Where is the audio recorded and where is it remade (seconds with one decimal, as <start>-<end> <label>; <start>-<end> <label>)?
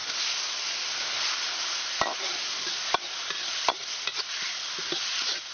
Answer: 0.0-5.5 recorded